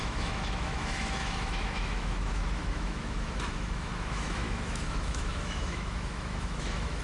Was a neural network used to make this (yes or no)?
yes